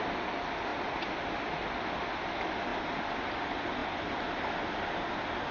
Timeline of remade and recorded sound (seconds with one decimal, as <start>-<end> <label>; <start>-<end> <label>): 0.0-5.5 recorded